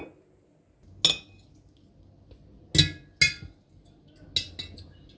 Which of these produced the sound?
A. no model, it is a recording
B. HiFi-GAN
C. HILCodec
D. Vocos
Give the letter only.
A